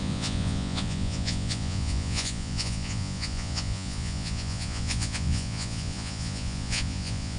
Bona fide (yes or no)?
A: no